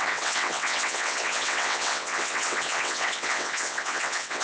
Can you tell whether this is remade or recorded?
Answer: remade